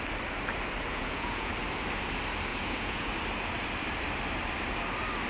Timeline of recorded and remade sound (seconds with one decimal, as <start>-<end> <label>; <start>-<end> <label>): 0.0-0.9 recorded; 0.9-1.5 remade; 1.5-2.5 recorded; 2.5-3.1 remade; 3.1-5.3 recorded